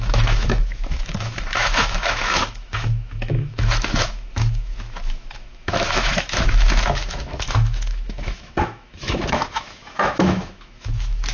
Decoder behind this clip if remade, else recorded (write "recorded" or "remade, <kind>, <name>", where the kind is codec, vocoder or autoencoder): remade, autoencoder, DAC-VAE